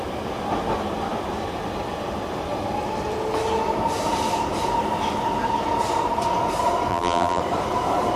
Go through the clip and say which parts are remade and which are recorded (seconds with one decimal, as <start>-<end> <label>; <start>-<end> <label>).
0.0-6.9 recorded; 6.9-7.4 remade; 7.4-8.2 recorded